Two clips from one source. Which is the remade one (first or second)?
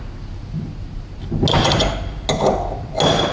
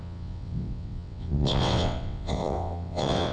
second